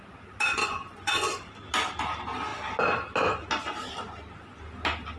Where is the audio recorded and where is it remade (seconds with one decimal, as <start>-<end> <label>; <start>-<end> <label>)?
0.0-0.6 recorded; 0.6-1.5 remade; 1.5-5.2 recorded